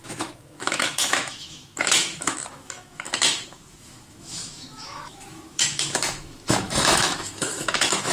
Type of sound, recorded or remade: remade